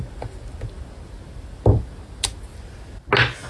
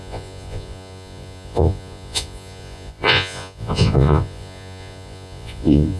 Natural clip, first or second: first